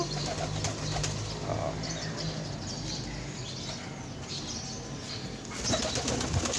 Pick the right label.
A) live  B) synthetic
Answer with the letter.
A